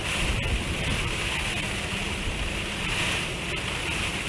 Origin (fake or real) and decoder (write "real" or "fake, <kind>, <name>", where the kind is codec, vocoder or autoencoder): real